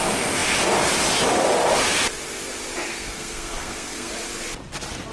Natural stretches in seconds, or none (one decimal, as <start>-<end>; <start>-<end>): 0.0-2.9; 4.1-5.1